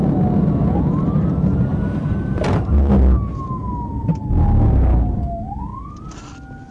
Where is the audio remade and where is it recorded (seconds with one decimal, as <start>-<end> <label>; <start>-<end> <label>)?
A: 0.0-1.7 recorded; 1.7-2.9 remade; 2.9-6.7 recorded